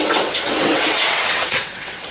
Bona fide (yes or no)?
no